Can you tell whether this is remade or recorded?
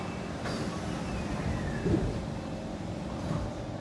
remade